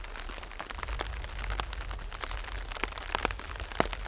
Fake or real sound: real